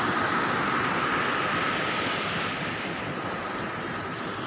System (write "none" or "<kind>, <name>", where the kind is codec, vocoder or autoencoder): none